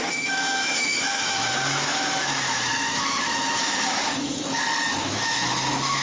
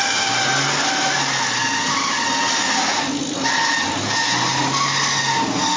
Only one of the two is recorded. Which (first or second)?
second